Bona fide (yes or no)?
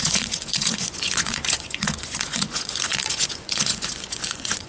no